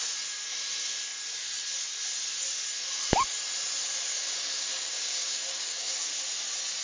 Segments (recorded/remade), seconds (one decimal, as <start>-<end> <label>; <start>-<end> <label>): 0.0-4.1 recorded; 4.1-6.1 remade; 6.1-6.8 recorded